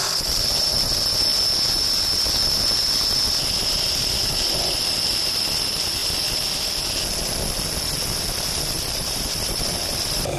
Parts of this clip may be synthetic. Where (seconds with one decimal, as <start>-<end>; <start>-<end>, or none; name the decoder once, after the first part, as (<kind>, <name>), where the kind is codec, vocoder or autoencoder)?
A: 0.0-1.3 (vocoder, BigVGAN v2); 3.7-6.0; 8.6-10.4